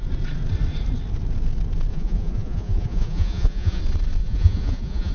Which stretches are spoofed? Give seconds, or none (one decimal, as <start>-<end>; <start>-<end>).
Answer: 1.9-3.8; 4.2-5.1